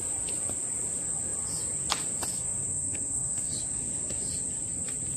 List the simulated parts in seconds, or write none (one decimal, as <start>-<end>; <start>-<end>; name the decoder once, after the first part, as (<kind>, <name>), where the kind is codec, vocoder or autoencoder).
2.3-3.5 (codec, SNAC)